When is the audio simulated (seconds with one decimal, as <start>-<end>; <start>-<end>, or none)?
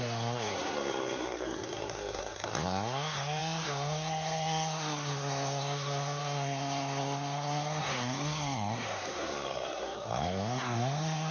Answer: 0.0-11.3